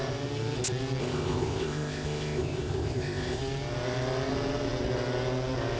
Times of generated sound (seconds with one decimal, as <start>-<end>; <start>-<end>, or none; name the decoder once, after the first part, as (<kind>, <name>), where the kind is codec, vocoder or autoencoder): 1.0-3.4 (codec, ZipCodec)